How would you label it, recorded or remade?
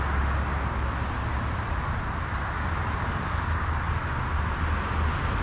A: recorded